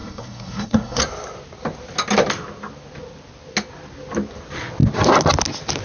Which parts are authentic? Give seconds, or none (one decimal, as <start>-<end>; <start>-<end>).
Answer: 1.0-5.8